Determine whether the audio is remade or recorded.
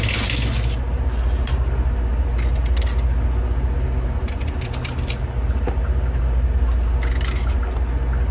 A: recorded